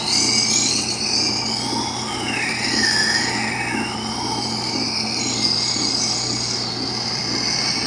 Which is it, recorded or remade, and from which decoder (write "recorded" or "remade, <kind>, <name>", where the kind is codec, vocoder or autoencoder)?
recorded